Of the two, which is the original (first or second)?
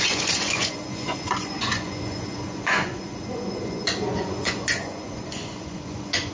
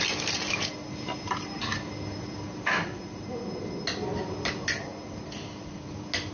second